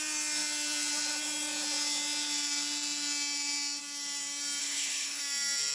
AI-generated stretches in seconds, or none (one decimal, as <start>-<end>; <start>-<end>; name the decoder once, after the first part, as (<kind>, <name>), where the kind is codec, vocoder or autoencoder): 4.6-5.2 (codec, HILCodec)